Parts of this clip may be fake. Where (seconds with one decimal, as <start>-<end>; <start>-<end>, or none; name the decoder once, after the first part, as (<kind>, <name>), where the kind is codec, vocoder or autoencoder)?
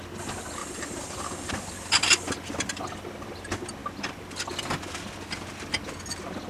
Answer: 0.6-1.5 (vocoder, BigVGAN v2)